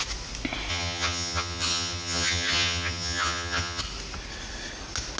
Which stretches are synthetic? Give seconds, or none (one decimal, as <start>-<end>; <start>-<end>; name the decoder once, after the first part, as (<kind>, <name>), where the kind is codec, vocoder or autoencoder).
0.7-3.8 (vocoder, HiFi-GAN)